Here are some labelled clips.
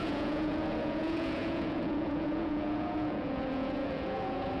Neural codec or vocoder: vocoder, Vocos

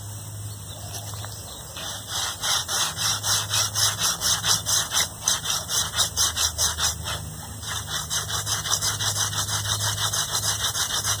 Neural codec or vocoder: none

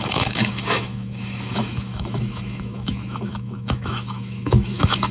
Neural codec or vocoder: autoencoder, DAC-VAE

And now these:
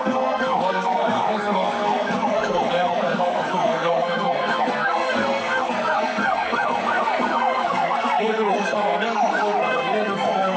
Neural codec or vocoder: codec, SNAC